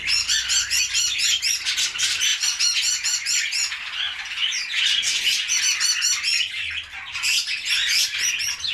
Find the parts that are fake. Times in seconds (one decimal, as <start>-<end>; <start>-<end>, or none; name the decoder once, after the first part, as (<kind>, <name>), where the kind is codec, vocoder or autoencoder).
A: none